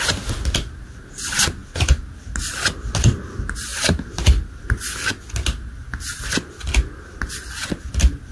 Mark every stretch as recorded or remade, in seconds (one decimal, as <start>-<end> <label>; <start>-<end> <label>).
0.0-8.3 recorded